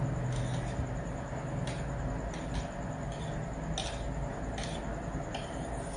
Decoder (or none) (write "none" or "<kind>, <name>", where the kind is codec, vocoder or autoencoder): none